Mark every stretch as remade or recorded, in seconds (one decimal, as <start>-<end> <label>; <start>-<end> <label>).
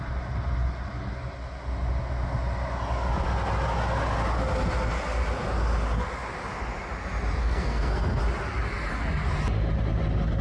0.0-7.4 recorded; 7.4-8.2 remade; 8.2-10.4 recorded